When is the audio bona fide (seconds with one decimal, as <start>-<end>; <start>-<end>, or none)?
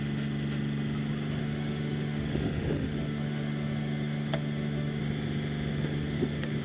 0.0-1.4; 5.0-5.7